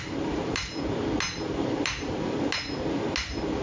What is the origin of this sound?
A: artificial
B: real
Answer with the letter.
B